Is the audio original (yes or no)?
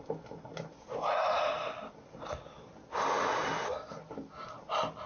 yes